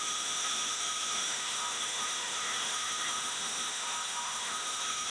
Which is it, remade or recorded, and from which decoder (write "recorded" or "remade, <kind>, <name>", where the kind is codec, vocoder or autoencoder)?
remade, autoencoder, DAC-VAE